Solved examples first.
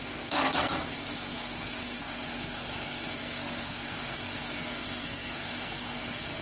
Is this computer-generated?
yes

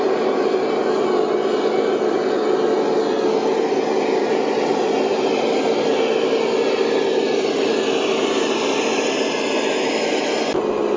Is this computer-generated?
no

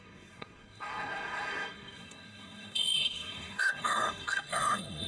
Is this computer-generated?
yes